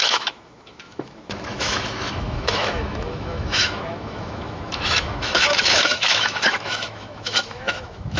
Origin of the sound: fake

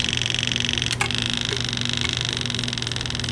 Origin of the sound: real